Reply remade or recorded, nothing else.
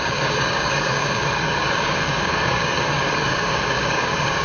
remade